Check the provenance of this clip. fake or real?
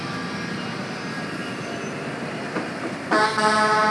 real